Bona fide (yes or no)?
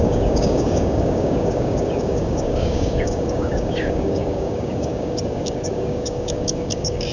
no